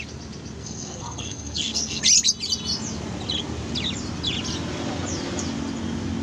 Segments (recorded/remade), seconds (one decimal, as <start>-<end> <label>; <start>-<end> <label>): 0.0-0.6 recorded; 0.6-2.0 remade; 2.0-6.2 recorded